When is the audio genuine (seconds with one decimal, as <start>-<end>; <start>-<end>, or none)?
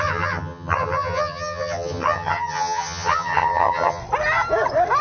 4.0-5.0